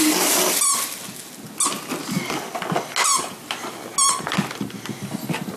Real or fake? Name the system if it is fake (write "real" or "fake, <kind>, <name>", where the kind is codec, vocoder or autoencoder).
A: real